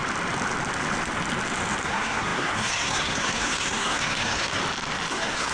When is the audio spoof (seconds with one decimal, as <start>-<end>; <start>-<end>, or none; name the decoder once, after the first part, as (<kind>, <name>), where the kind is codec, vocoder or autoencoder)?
1.8-4.6 (codec, SNAC); 5.1-5.5